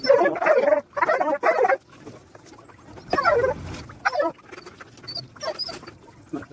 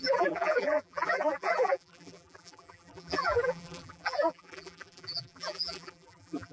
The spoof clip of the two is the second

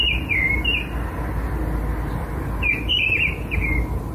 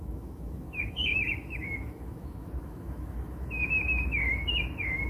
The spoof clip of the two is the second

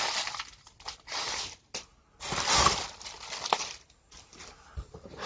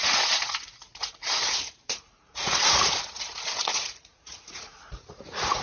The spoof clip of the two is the second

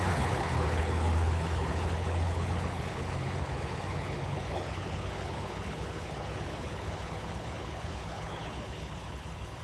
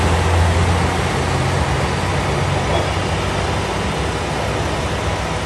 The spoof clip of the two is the first